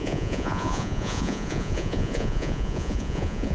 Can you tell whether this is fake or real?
fake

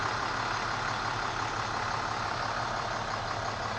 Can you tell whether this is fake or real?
real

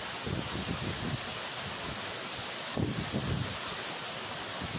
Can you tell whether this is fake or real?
real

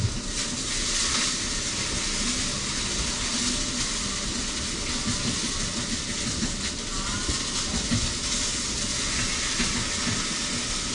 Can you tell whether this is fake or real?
real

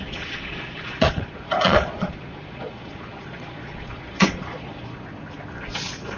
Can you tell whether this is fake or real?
fake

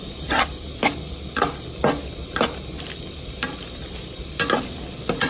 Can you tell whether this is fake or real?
real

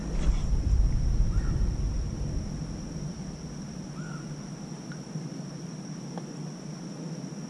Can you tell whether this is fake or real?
real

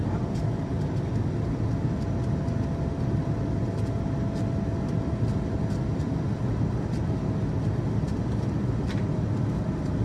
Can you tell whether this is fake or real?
real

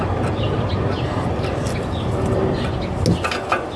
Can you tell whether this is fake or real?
real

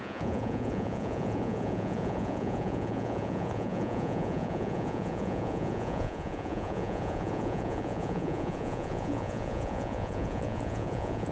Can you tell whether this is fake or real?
fake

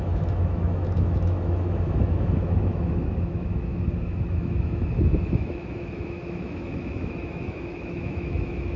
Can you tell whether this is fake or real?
fake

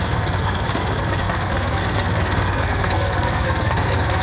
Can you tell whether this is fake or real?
fake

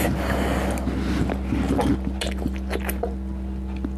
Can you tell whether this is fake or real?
real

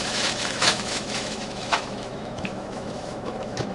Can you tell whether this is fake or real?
fake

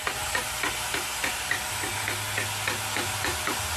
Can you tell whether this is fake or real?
real